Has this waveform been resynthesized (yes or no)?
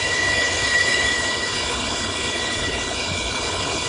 yes